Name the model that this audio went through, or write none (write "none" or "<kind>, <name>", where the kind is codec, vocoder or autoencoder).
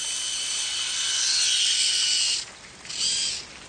none